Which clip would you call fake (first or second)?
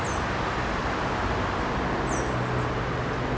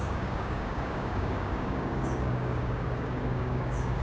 second